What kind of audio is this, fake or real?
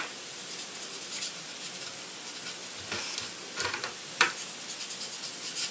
real